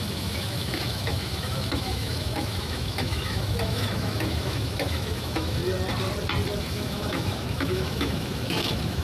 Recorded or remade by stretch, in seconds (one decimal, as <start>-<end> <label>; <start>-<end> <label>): 0.0-5.6 remade; 5.6-6.6 recorded; 6.6-9.0 remade